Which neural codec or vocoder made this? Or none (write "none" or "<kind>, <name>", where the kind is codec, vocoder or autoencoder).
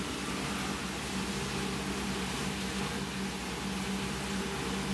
none